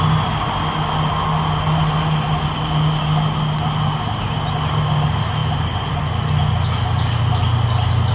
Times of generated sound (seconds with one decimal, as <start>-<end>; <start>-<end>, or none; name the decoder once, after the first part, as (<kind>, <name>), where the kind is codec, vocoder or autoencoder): 5.4-6.0 (vocoder, BigVGAN v2)